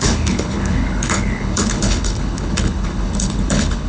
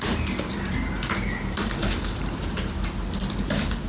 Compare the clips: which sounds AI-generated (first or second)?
first